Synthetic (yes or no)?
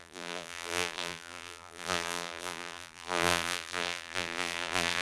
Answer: yes